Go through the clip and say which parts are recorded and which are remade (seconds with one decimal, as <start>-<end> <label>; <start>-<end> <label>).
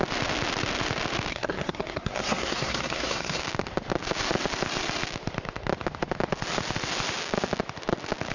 0.0-1.3 recorded; 1.3-3.4 remade; 3.4-8.3 recorded